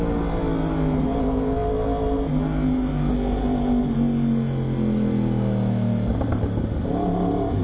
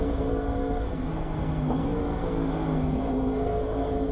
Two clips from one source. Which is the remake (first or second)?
second